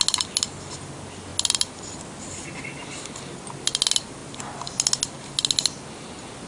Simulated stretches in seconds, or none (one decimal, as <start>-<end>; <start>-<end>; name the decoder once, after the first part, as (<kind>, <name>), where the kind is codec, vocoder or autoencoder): none